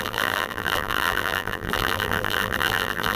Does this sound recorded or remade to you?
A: remade